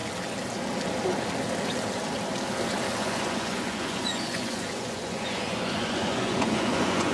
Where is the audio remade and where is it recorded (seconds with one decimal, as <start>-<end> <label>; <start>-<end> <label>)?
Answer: 0.0-3.0 recorded; 3.0-7.1 remade